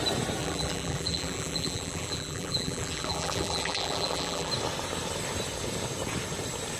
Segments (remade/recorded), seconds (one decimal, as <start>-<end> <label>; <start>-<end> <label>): 0.0-0.4 recorded; 0.4-4.5 remade; 4.5-6.8 recorded